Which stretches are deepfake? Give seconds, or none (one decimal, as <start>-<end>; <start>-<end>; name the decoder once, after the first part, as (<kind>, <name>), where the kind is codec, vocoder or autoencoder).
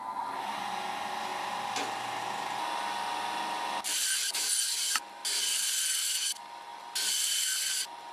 none